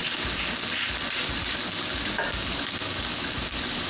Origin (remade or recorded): recorded